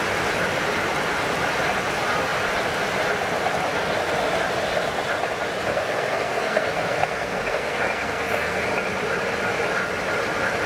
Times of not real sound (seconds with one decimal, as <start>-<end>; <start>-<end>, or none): 5.7-8.6